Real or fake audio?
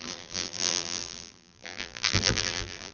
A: fake